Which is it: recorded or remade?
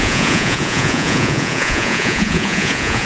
remade